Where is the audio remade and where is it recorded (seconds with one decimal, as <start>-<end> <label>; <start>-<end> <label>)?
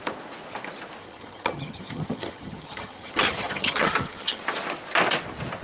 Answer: 0.0-1.0 recorded; 1.0-4.4 remade; 4.4-5.6 recorded